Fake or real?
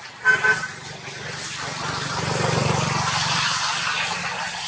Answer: real